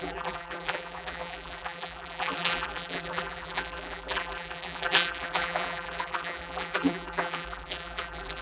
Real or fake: fake